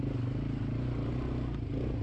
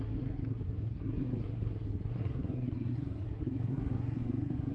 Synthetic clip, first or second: second